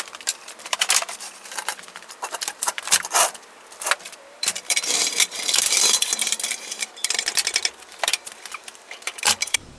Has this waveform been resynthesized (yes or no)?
yes